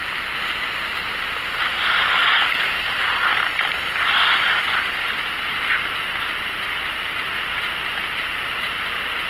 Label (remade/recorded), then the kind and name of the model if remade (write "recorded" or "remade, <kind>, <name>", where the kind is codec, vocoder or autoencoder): recorded